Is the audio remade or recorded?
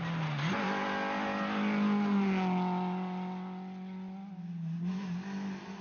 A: recorded